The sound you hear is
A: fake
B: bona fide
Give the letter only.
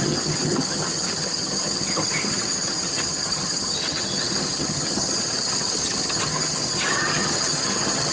A